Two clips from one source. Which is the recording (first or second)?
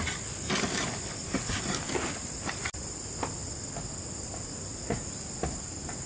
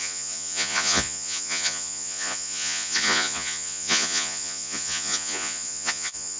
first